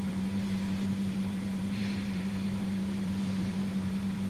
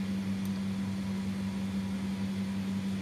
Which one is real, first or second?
second